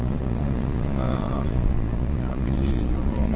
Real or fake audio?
fake